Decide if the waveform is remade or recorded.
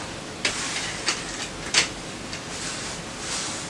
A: recorded